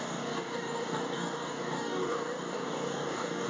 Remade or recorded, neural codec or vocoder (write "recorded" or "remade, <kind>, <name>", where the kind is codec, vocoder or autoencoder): remade, codec, DAC